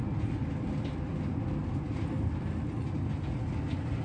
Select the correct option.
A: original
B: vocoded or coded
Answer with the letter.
A